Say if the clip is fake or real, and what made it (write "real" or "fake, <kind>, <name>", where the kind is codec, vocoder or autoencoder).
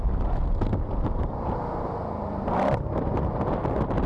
real